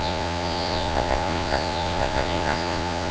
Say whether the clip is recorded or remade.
remade